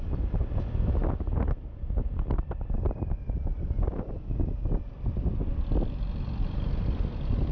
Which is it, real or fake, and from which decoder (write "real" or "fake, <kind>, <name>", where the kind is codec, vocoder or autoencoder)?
real